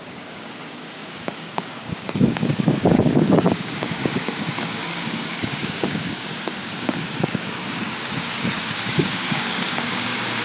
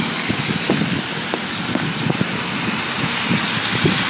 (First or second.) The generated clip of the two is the first